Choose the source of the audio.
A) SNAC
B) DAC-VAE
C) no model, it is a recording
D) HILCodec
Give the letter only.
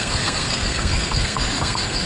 A